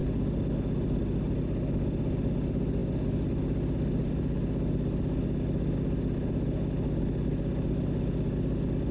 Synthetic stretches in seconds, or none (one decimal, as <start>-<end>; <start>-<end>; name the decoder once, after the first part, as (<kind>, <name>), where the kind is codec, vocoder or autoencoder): none